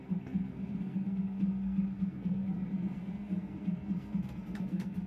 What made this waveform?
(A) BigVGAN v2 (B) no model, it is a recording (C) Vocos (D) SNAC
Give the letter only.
D